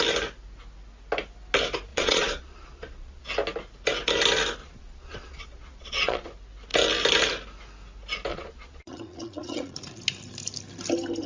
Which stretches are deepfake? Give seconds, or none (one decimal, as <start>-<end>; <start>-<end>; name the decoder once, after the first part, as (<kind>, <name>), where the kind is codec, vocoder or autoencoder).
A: 1.9-3.3 (vocoder, Vocos); 4.6-6.3; 8.3-10.0